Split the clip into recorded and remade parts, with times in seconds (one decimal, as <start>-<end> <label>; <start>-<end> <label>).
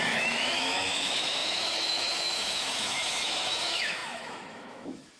0.0-5.2 remade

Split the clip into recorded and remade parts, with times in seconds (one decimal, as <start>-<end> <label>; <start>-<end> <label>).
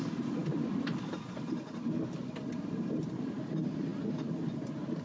0.0-5.0 recorded